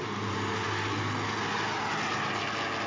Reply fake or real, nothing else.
real